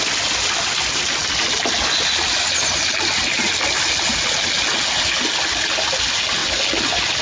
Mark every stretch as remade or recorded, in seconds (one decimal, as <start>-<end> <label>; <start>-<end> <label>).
0.0-7.2 recorded